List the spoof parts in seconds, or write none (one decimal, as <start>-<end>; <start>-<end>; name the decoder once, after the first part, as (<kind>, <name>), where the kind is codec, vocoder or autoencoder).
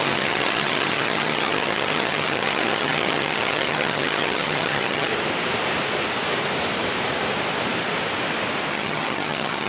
0.0-5.1 (vocoder, HiFi-GAN); 8.7-9.7